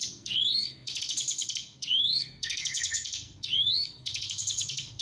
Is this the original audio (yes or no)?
no